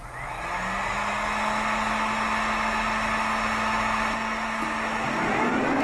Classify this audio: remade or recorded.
recorded